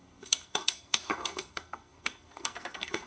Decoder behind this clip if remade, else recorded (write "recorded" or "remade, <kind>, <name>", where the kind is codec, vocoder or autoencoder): remade, codec, SNAC